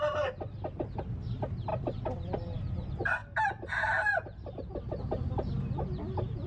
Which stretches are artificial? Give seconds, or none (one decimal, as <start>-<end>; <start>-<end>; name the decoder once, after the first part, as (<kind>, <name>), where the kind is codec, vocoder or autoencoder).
none